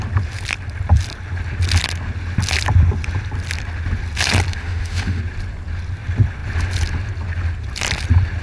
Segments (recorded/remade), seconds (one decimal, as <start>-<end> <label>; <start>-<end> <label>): 0.0-4.5 recorded; 4.5-5.2 remade; 5.2-8.4 recorded